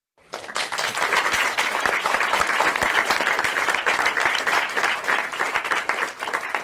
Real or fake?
fake